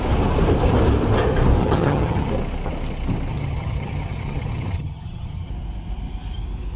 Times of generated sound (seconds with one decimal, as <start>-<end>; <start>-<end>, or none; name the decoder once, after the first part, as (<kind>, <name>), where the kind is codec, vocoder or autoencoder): 1.6-2.3 (vocoder, HiFi-GAN); 3.3-5.5